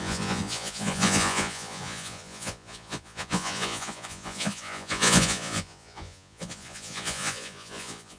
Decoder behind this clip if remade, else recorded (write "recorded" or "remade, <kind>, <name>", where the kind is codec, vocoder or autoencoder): remade, vocoder, Vocos